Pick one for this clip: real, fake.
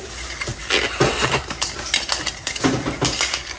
real